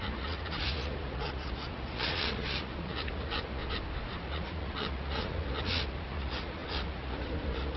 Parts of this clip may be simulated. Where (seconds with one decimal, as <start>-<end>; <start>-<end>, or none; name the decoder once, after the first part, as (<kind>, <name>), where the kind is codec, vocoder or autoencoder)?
0.0-3.6 (vocoder, Vocos); 4.2-7.8